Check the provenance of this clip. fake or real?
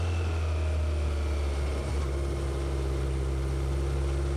real